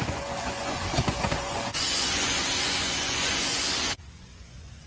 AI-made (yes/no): yes